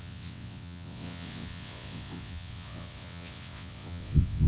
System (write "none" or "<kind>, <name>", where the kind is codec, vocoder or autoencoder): vocoder, WaveNeXt